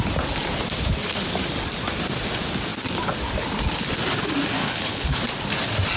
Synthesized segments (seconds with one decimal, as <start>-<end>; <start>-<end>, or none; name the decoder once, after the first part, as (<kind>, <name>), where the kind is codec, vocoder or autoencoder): 4.6-5.2 (codec, HILCodec)